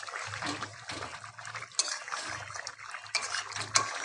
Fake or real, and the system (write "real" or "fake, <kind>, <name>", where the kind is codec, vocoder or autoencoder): real